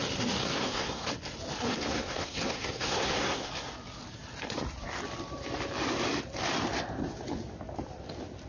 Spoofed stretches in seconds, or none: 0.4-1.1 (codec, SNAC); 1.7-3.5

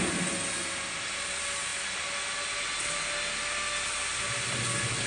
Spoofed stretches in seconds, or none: none

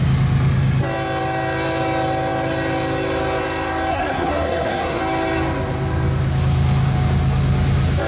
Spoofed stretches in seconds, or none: 3.9-5.0 (codec, SNAC)

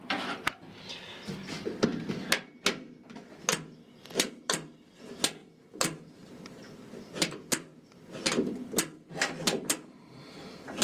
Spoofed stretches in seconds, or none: 0.0-1.9 (vocoder, BigVGAN v2); 2.5-10.8